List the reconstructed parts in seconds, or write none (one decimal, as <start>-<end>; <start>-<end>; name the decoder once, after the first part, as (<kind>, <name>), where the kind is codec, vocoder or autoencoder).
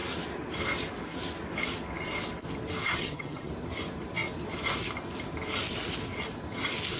2.8-3.5 (vocoder, HiFi-GAN)